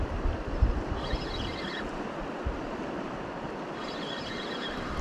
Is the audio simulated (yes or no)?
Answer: yes